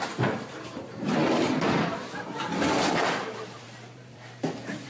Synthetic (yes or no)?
yes